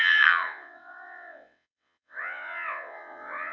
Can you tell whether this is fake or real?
fake